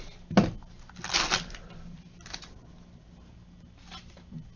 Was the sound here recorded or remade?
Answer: recorded